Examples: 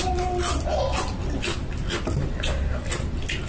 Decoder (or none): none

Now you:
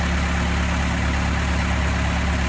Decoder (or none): none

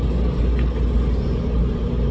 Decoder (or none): none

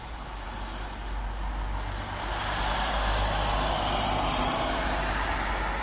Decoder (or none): none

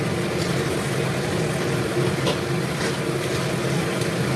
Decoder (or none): none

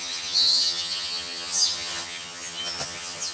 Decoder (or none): vocoder, HiFi-GAN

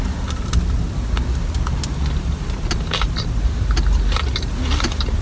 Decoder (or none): none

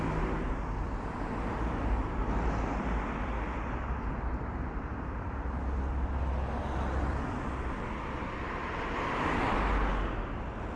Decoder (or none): none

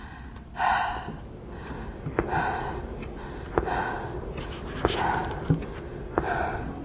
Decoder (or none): none